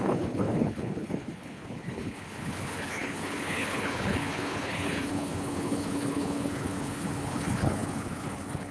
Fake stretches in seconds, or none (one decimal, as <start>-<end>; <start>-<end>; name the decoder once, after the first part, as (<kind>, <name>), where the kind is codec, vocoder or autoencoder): 0.0-8.7 (codec, HILCodec)